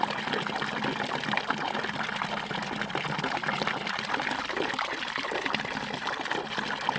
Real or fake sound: real